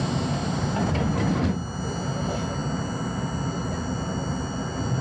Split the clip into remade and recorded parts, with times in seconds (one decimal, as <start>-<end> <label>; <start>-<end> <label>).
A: 0.0-5.0 recorded